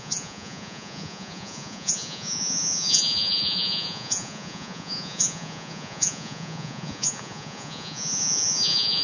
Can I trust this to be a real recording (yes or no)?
no